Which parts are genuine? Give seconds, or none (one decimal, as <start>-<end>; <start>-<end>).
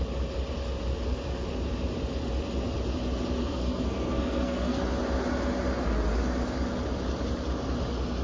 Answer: 0.0-3.4; 4.8-8.2